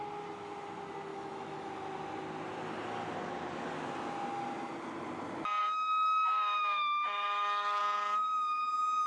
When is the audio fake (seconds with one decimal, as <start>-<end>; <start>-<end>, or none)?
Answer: 1.1-1.7; 5.6-7.8